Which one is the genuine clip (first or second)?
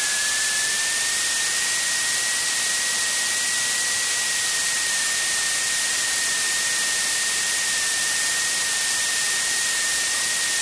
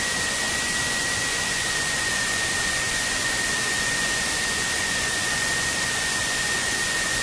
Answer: first